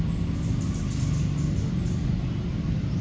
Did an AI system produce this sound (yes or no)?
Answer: no